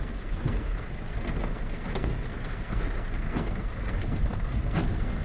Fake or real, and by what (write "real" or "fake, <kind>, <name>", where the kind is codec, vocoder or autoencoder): fake, codec, SNAC